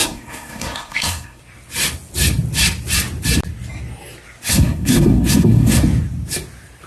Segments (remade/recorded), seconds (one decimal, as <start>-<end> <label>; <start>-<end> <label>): 0.0-1.4 remade; 1.4-4.5 recorded; 4.5-5.8 remade; 5.8-6.9 recorded